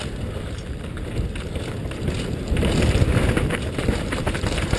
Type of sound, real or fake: real